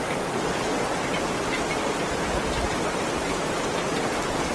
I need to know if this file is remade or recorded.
recorded